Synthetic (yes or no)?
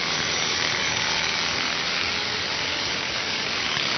yes